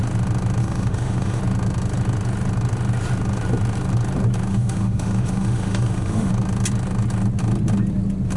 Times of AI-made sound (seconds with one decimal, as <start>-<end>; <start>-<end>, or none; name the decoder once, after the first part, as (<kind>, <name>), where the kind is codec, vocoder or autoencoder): 0.6-1.4 (autoencoder, DAC-VAE); 4.5-6.3